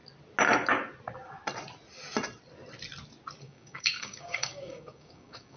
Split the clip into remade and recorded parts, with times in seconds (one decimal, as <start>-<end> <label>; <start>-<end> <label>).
0.0-3.4 recorded; 3.4-5.6 remade